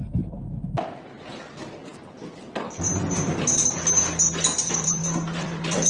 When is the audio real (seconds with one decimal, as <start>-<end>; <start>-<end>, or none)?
0.0-5.9